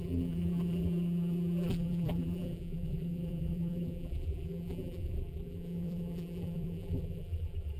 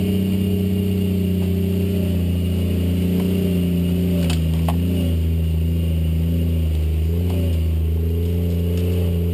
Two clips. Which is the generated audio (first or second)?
first